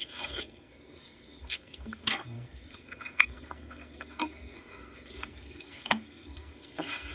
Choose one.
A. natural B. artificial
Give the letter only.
B